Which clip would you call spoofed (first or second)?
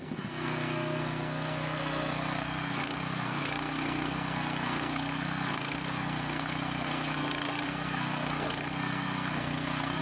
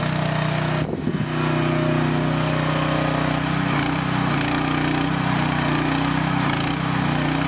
first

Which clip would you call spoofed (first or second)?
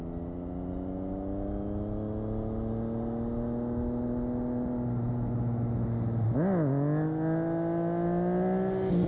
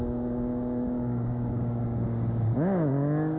second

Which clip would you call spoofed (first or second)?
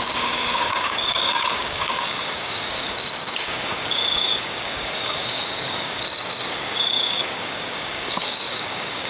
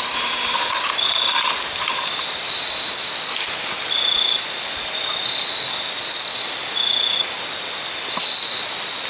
first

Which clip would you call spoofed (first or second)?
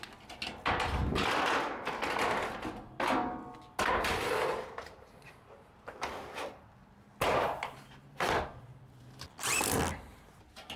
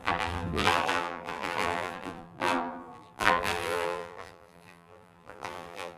second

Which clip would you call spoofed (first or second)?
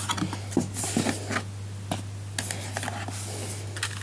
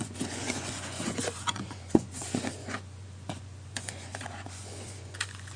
second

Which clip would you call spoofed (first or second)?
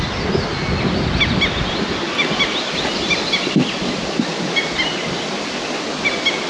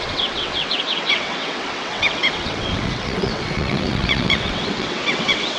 second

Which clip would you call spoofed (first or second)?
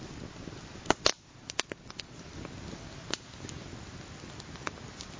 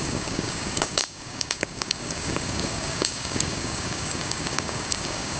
second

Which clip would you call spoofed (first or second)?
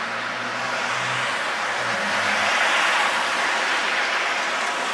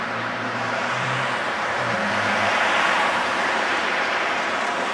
second